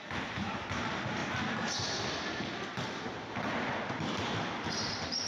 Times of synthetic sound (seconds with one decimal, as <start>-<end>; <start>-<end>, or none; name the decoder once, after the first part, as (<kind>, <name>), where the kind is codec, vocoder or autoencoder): 0.0-5.3 (vocoder, BigVGAN v2)